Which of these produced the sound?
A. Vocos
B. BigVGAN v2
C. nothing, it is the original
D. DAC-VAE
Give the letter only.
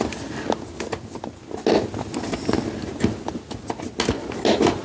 C